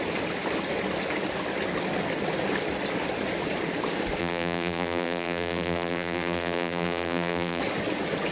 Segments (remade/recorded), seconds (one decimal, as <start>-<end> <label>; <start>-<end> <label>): 0.0-4.2 recorded; 4.2-7.6 remade; 7.6-8.3 recorded